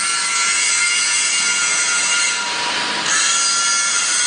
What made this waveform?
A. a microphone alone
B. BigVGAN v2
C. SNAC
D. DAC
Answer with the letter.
A